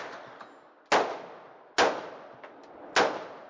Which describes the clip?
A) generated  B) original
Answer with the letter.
B